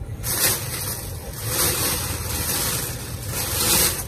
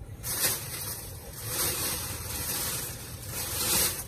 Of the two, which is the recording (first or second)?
first